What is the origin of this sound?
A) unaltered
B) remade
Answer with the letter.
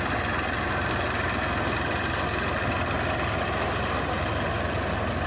A